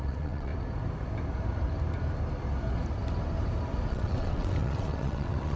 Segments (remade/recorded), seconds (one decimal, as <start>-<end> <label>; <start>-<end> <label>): 0.0-0.5 remade; 0.5-3.9 recorded; 3.9-5.6 remade